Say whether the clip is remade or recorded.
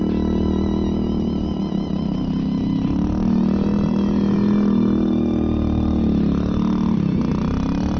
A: recorded